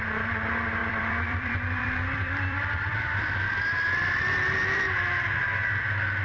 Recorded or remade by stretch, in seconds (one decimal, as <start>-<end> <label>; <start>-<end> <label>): 0.0-0.8 recorded; 0.8-4.5 remade; 4.5-6.2 recorded